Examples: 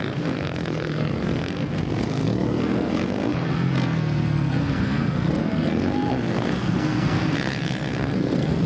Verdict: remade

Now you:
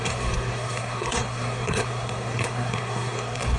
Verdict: remade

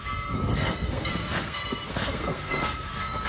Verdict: remade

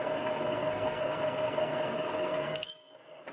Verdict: remade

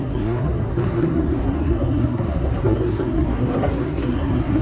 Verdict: remade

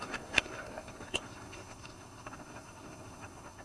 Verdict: remade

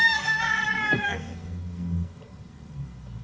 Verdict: remade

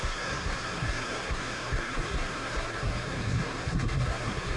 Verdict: remade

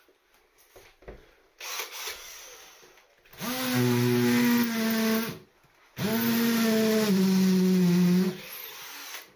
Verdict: recorded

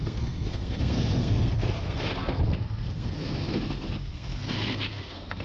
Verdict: remade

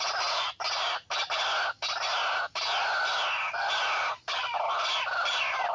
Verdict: recorded